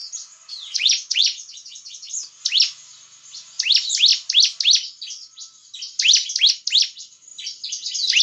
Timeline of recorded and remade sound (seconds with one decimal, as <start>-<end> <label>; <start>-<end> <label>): 0.0-2.1 remade; 2.1-8.2 recorded